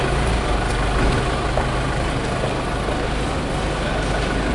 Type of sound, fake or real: real